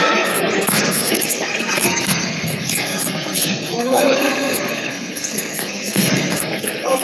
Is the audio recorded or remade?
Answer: remade